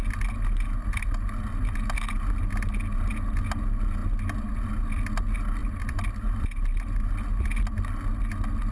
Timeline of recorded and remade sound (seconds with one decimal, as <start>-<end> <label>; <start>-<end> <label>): 0.0-5.6 recorded; 5.6-7.1 remade; 7.1-8.7 recorded